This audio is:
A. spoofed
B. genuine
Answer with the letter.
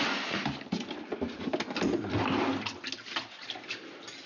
B